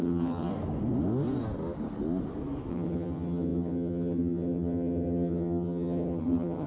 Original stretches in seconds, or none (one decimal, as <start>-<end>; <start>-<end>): 0.5-2.7